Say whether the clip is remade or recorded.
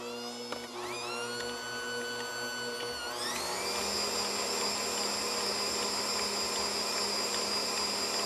recorded